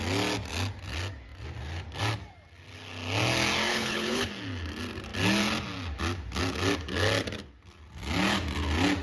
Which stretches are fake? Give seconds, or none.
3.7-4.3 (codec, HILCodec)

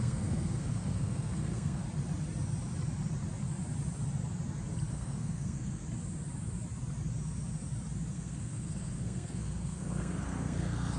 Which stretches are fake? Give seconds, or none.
0.0-1.8 (codec, SNAC); 4.9-5.8; 8.1-11.0

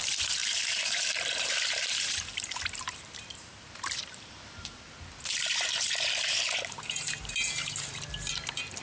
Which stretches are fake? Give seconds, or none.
0.4-4.8 (vocoder, BigVGAN v2); 5.3-7.9

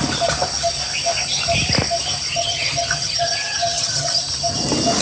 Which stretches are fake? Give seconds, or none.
2.3-4.2 (vocoder, HiFi-GAN)